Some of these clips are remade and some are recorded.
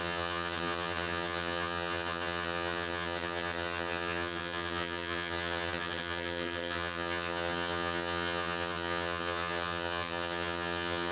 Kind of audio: remade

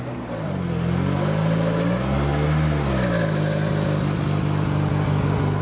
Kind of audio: recorded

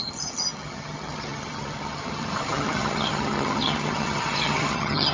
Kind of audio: remade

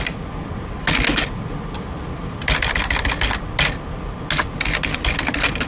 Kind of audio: recorded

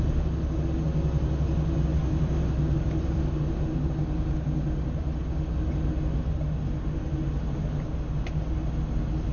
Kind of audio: recorded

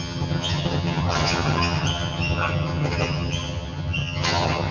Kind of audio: remade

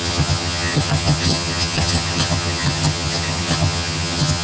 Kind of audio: remade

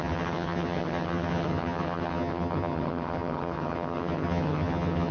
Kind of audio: remade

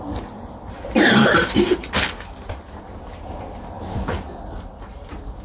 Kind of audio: recorded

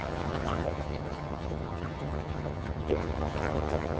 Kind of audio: remade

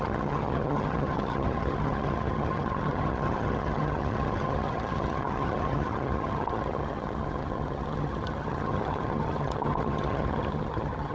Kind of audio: remade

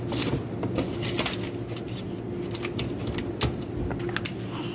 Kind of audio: recorded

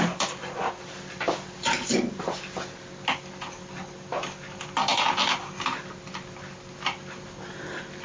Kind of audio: recorded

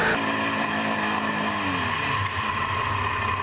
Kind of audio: recorded